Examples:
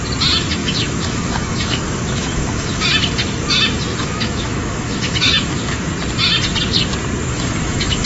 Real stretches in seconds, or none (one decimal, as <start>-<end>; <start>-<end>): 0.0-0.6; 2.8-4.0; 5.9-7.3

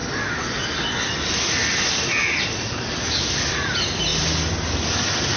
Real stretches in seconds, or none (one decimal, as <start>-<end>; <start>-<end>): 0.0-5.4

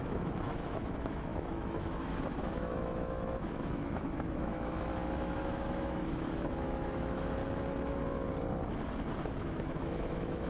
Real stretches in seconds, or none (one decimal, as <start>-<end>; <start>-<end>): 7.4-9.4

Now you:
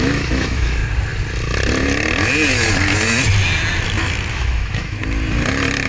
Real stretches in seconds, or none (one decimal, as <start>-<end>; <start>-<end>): 0.8-4.3; 5.0-5.9

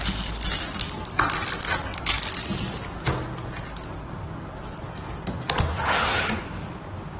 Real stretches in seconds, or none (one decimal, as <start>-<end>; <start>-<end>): 0.0-5.7; 6.4-7.2